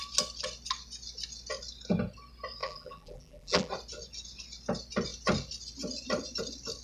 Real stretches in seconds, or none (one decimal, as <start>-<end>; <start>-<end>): 0.0-2.6; 3.7-6.8